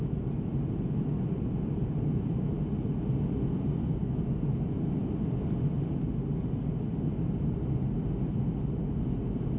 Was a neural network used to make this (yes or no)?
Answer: no